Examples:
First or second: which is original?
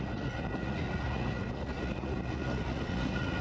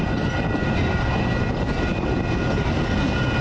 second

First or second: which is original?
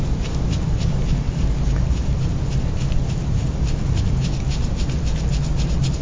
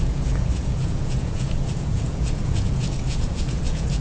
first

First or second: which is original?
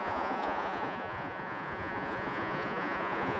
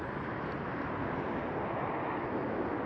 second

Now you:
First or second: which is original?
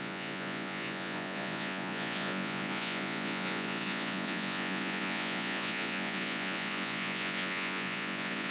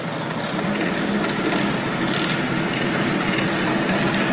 second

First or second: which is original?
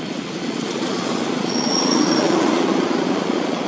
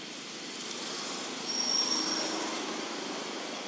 second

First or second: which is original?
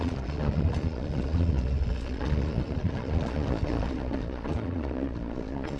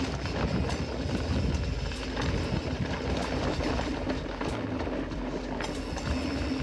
second